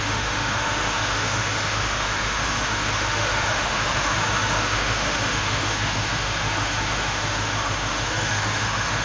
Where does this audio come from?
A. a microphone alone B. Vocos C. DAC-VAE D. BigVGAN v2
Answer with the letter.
C